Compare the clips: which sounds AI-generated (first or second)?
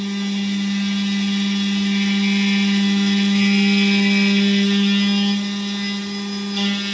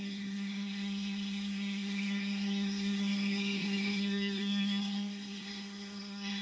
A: second